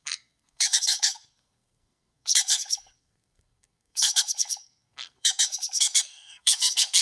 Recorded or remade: remade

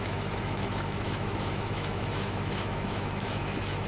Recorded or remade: remade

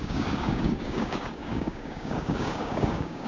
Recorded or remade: remade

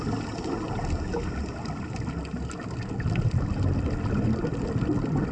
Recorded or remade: recorded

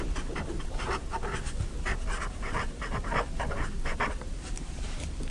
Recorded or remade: recorded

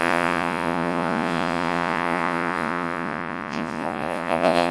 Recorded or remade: remade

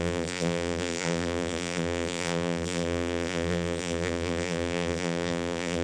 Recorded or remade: remade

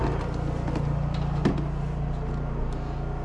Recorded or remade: recorded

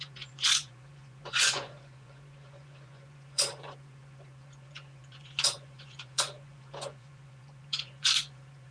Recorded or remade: remade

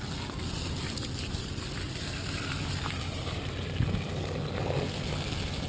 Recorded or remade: recorded